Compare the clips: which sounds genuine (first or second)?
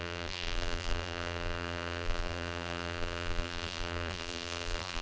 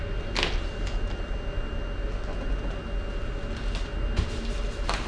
second